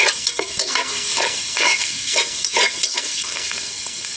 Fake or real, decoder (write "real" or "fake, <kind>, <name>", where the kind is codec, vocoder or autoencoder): fake, codec, SNAC